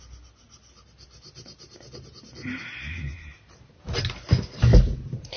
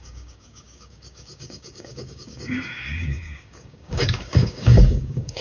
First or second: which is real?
first